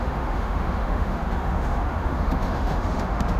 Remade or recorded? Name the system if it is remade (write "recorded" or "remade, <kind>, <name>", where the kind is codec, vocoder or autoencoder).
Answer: remade, autoencoder, DAC-VAE